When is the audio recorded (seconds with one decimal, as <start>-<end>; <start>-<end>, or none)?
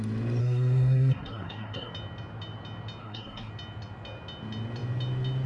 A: 0.0-0.4; 1.9-3.0; 3.5-5.5